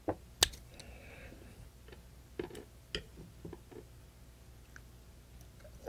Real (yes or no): yes